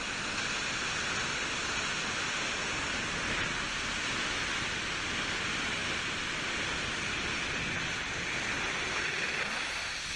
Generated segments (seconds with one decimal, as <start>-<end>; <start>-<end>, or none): none